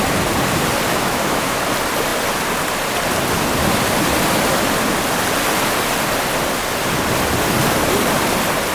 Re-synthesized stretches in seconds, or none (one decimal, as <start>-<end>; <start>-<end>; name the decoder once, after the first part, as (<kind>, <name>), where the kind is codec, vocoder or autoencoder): 0.9-1.6 (autoencoder, DAC-VAE)